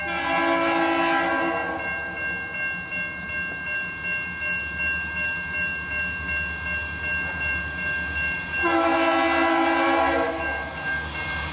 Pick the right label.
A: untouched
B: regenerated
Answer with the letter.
A